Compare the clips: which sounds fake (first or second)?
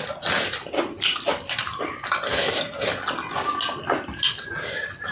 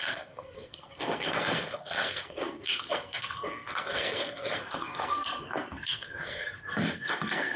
second